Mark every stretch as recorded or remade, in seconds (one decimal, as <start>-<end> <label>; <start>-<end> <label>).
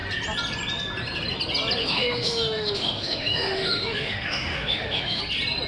0.0-1.8 recorded; 1.8-5.2 remade; 5.2-5.7 recorded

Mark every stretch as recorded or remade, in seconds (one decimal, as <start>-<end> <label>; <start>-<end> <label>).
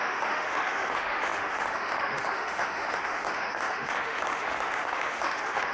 0.0-5.7 remade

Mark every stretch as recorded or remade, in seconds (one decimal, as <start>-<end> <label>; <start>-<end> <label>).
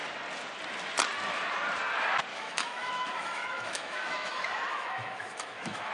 0.0-2.3 recorded; 2.3-5.9 remade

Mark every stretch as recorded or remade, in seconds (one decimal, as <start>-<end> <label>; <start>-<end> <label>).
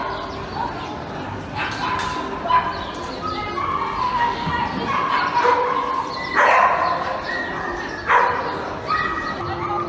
0.0-4.0 recorded; 4.0-4.5 remade; 4.5-9.9 recorded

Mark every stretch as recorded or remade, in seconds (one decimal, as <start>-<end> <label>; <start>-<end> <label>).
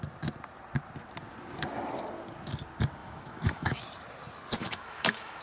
0.0-3.0 recorded; 3.0-3.8 remade; 3.8-4.6 recorded; 4.6-5.4 remade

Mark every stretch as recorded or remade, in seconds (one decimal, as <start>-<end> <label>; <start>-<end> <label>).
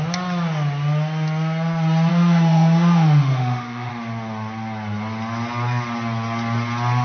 0.0-2.1 recorded; 2.1-3.9 remade; 3.9-7.0 recorded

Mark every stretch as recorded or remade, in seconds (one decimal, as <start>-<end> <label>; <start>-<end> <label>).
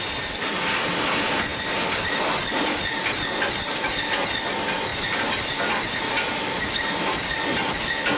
0.0-8.2 recorded